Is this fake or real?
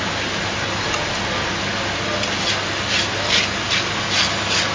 real